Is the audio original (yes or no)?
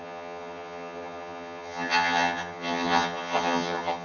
no